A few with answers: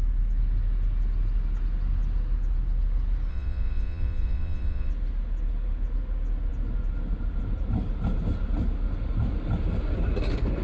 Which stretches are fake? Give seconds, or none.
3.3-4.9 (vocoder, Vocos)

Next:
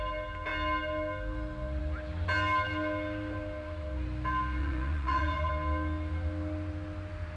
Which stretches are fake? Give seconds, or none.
4.6-5.5 (vocoder, Vocos)

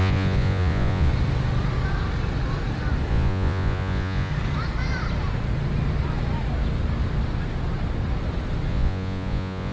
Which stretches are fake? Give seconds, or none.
0.0-1.1 (vocoder, Vocos); 3.1-4.3; 8.7-9.7

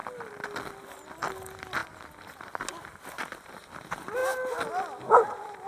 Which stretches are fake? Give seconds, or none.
none

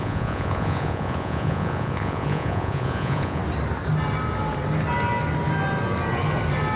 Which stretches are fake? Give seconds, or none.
0.0-3.4 (vocoder, Vocos)